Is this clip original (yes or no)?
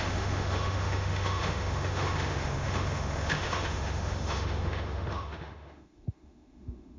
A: no